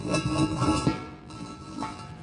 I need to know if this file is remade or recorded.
remade